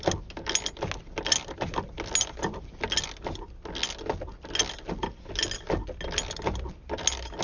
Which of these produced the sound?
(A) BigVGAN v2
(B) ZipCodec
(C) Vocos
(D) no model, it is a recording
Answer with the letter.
D